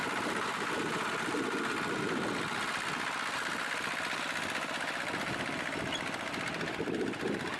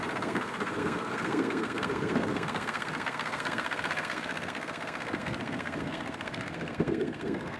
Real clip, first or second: first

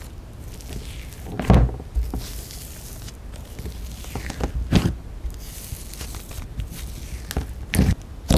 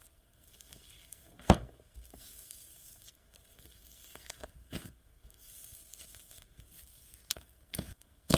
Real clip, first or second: first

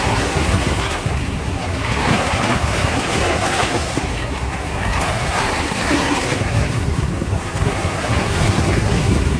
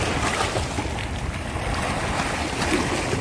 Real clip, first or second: second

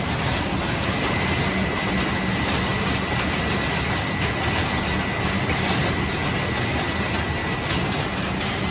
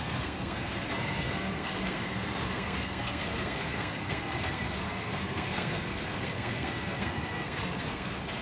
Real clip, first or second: first